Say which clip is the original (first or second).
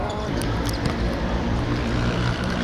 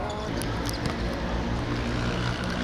second